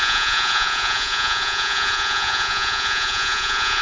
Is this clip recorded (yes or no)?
no